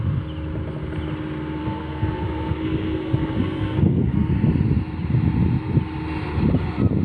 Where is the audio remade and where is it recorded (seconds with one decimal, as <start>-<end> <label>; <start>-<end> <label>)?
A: 0.0-1.6 recorded; 1.6-4.3 remade; 4.3-7.0 recorded